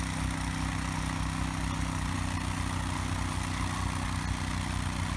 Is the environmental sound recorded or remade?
recorded